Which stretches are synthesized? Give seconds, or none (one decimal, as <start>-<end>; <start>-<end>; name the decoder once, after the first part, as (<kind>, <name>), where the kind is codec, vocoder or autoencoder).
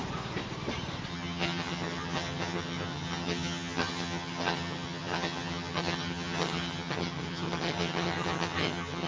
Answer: 1.1-9.1 (vocoder, HiFi-GAN)